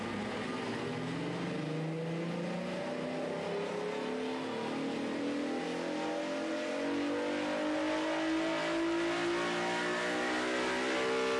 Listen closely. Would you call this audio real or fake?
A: real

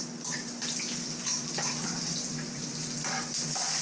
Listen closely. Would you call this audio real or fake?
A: real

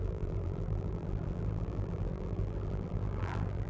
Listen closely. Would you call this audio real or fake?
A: fake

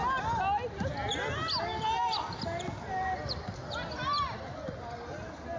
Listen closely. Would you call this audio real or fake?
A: real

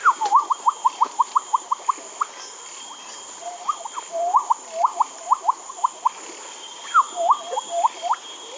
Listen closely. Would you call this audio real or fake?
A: fake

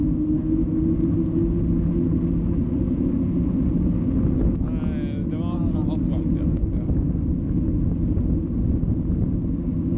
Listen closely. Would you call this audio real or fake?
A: real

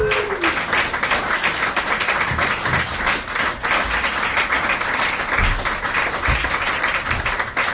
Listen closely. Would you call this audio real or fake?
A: real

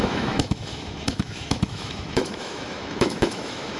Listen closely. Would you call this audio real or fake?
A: fake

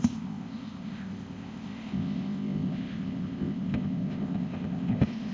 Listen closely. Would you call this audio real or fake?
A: fake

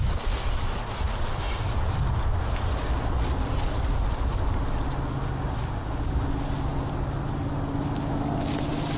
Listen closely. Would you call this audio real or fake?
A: real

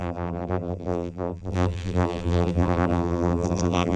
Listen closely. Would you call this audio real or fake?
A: fake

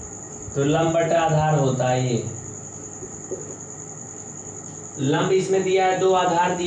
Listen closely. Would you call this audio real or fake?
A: real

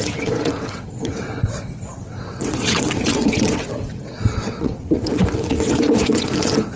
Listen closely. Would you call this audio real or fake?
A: fake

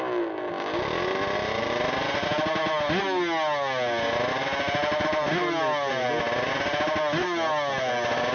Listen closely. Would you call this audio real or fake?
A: real